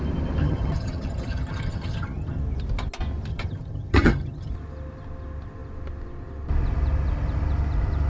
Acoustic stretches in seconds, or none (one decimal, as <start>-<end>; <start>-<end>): 0.0-0.4; 2.4-3.3; 4.5-8.1

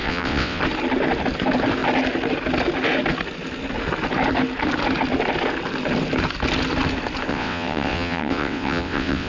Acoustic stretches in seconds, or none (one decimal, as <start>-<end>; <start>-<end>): 0.6-7.3

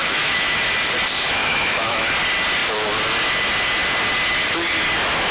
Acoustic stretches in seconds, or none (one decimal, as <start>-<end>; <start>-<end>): 0.6-1.4; 2.1-5.3

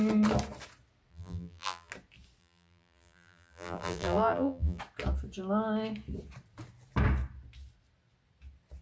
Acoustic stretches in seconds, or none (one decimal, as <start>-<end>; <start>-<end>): 0.0-1.1; 1.9-2.4; 4.8-8.8